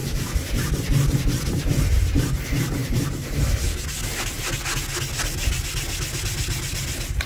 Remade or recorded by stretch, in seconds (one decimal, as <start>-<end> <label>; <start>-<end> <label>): 0.0-7.3 recorded